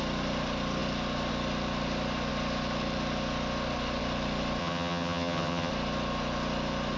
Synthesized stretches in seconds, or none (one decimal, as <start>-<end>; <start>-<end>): 4.6-5.7